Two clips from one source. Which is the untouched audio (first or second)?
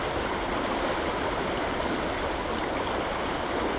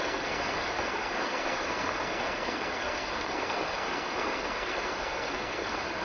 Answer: first